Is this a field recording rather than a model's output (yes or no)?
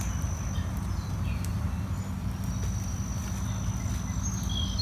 yes